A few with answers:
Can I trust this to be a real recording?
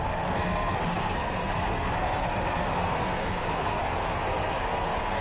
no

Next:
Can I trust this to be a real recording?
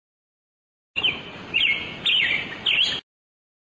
yes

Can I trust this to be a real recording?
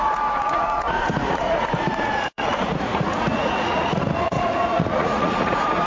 no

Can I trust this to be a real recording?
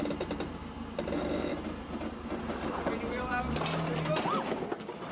yes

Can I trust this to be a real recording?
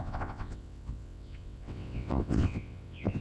no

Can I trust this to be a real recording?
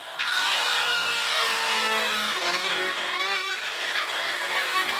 no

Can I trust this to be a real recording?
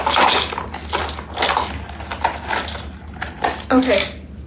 yes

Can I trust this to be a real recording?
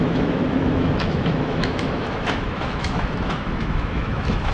no